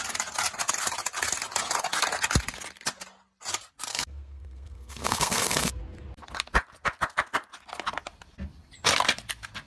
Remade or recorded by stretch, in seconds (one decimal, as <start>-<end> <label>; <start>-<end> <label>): 0.0-3.9 recorded; 3.9-5.8 remade; 5.8-9.7 recorded